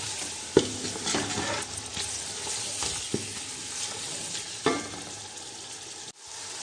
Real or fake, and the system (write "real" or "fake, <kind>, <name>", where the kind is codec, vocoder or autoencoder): real